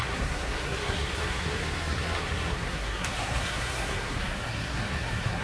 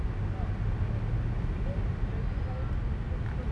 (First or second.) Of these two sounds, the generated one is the first